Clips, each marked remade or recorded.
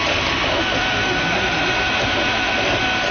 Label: recorded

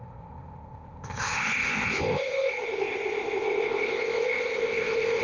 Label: remade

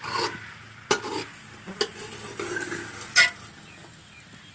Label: recorded